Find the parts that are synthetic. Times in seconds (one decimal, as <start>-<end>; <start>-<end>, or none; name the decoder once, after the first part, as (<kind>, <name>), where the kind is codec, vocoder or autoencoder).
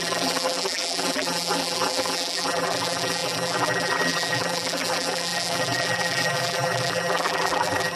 0.0-8.0 (vocoder, BigVGAN v2)